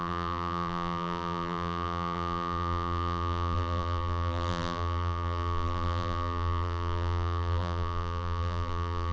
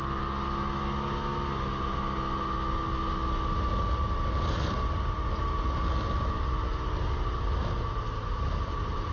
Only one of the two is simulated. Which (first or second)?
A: first